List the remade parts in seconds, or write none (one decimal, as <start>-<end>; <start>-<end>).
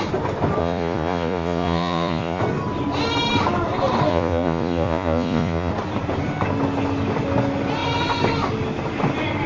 0.6-2.4; 4.1-5.7